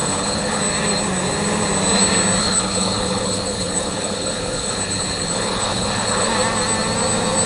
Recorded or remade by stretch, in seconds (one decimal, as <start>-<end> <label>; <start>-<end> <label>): 0.0-0.6 remade; 0.6-2.4 recorded; 2.4-6.3 remade; 6.3-7.5 recorded